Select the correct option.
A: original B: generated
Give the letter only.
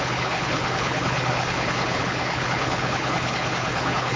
B